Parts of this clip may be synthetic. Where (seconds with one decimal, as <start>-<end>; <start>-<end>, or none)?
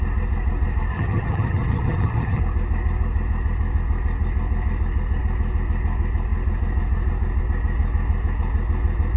0.9-2.4